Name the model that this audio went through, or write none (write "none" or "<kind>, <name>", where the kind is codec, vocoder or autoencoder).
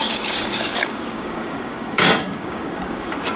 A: codec, DAC